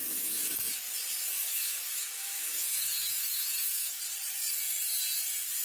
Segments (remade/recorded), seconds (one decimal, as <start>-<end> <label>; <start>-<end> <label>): 0.0-0.8 remade; 0.8-1.3 recorded; 1.3-4.0 remade; 4.0-5.6 recorded